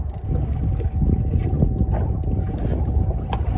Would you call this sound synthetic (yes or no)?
no